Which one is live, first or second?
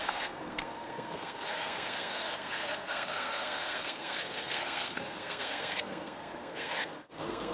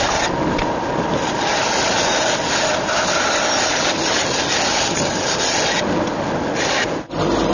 second